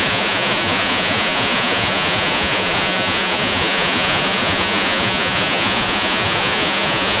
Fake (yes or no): yes